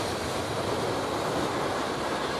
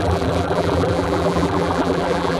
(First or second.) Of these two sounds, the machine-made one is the second